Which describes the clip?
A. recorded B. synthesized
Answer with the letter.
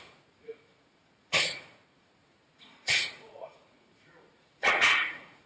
B